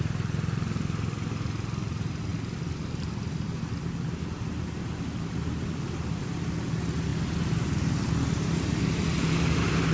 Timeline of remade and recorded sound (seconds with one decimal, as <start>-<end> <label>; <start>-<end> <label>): 0.0-9.9 recorded